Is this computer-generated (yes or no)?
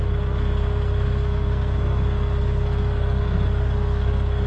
yes